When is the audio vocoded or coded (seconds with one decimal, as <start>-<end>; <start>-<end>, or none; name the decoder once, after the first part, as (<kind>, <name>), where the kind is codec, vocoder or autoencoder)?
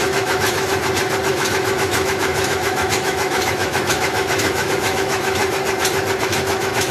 0.0-0.7 (autoencoder, DAC-VAE); 1.3-5.4; 6.2-6.9